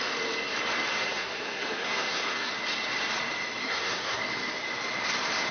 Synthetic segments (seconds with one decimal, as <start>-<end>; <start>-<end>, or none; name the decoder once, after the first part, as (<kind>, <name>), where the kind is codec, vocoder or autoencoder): 0.9-2.5 (codec, SNAC); 3.6-4.2